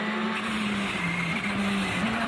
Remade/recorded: recorded